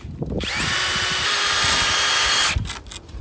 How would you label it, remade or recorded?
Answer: recorded